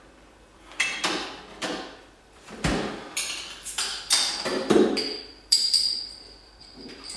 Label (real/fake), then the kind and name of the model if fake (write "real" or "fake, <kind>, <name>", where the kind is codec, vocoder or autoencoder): fake, vocoder, BigVGAN v2